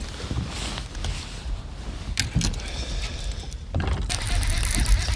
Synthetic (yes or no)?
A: no